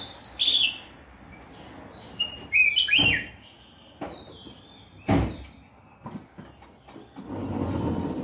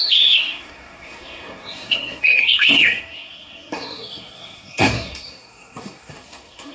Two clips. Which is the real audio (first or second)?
first